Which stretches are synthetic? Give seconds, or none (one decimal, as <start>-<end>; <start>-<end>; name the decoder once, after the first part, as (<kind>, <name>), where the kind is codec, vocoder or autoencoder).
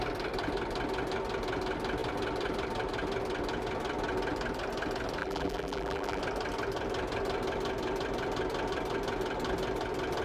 5.2-6.2 (vocoder, BigVGAN v2)